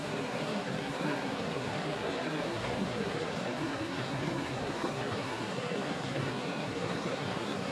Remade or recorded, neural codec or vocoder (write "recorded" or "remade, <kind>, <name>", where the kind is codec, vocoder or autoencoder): remade, codec, SNAC